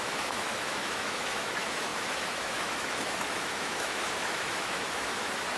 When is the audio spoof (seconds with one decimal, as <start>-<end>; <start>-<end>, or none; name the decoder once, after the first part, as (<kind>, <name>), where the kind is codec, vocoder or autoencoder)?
0.0-5.6 (autoencoder, DAC-VAE)